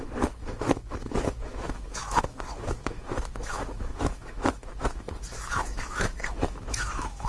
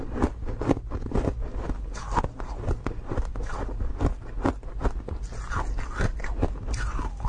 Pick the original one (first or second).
second